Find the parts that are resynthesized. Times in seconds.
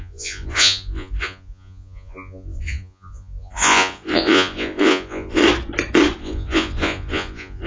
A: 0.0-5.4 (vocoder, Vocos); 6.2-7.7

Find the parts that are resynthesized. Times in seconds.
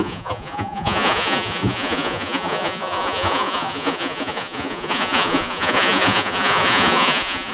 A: 0.0-7.5 (vocoder, Vocos)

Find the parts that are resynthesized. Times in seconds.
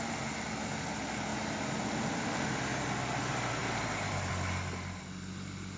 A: none